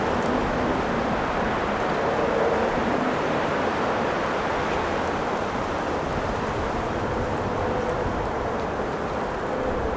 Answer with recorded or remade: recorded